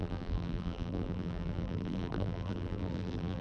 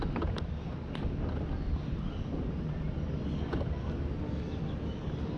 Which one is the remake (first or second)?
first